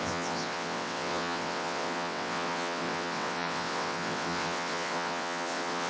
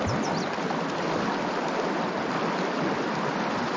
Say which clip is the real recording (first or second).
second